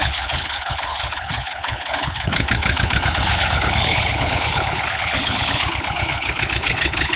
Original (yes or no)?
no